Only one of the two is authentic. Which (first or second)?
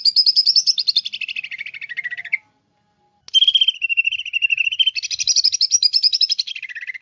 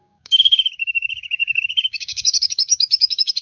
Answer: first